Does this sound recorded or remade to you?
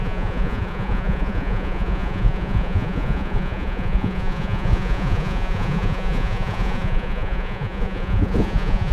remade